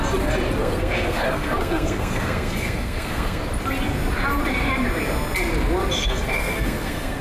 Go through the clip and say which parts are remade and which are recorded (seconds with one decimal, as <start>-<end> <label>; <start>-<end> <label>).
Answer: 0.0-0.6 recorded; 0.6-3.4 remade; 3.4-6.0 recorded; 6.0-7.2 remade